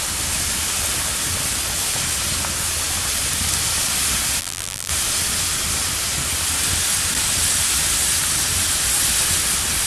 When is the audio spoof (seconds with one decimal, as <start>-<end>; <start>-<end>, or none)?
4.4-4.9